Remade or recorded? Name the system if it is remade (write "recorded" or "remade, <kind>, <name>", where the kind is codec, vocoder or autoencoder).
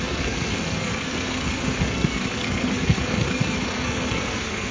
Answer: remade, codec, SNAC